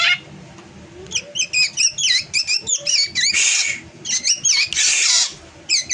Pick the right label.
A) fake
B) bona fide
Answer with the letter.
B